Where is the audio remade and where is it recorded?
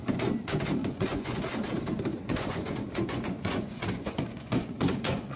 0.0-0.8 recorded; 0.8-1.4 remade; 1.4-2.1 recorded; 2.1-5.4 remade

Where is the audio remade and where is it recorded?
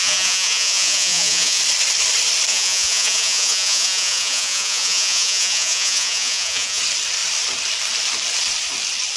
0.0-1.6 remade; 1.6-2.5 recorded; 2.5-6.8 remade; 6.8-9.2 recorded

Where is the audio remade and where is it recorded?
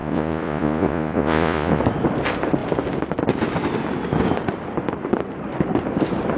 0.0-1.8 remade; 1.8-6.4 recorded